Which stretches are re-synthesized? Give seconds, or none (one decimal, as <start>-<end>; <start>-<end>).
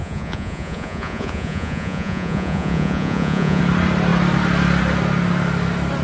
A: 0.0-3.6